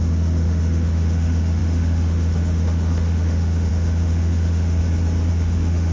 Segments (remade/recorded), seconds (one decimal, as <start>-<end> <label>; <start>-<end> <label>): 0.0-4.8 remade; 4.8-5.3 recorded; 5.3-5.9 remade

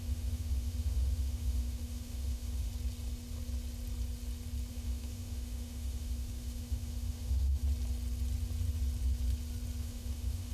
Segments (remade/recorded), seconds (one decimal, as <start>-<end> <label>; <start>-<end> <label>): 0.0-2.7 remade; 2.7-4.7 recorded; 4.7-7.6 remade; 7.6-9.8 recorded; 9.8-10.5 remade

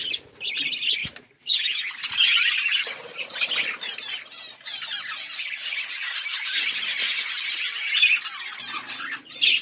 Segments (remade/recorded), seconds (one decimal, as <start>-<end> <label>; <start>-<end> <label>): 0.0-1.0 recorded; 1.0-1.9 remade; 1.9-9.6 recorded

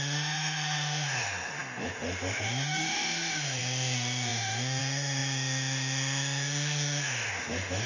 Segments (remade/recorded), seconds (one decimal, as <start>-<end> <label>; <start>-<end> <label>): 0.0-7.9 remade